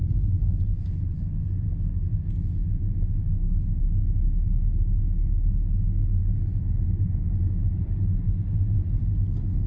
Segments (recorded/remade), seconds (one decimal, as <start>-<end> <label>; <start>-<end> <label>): 0.0-9.7 recorded